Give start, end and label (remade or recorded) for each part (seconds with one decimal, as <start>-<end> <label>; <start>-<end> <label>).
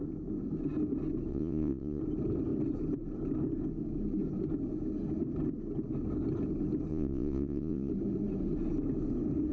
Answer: 0.0-1.3 recorded; 1.3-2.0 remade; 2.0-6.9 recorded; 6.9-7.9 remade; 7.9-9.5 recorded